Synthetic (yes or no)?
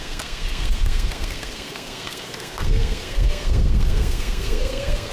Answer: yes